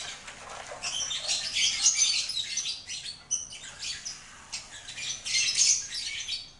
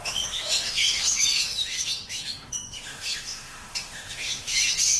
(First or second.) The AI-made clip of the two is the second